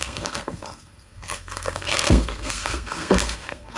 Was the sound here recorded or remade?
remade